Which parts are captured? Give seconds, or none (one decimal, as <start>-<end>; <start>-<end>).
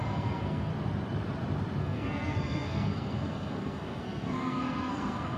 0.7-1.8